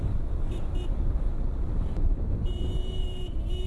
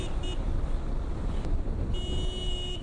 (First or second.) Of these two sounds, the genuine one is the second